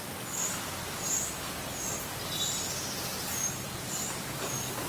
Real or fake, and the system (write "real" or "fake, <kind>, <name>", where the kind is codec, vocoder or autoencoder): real